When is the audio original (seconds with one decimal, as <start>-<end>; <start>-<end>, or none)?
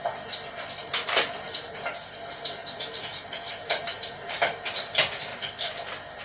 0.0-0.5; 5.3-6.2